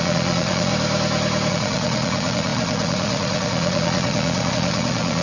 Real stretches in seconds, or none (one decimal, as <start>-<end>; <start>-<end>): 0.7-1.5